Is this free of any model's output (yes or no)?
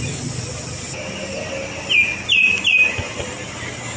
yes